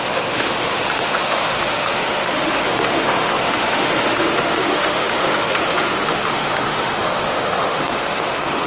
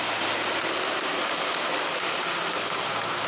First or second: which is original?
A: second